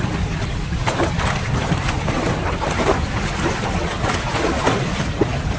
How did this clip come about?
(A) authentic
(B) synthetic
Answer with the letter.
A